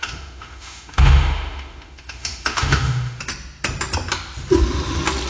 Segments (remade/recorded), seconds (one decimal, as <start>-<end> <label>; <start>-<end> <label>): 0.0-3.2 remade; 3.2-5.3 recorded